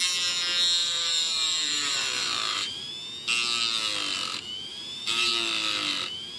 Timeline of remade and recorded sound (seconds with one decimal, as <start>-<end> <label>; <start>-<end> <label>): 0.0-0.8 recorded; 0.8-2.9 remade; 2.9-4.7 recorded; 4.7-5.3 remade; 5.3-6.4 recorded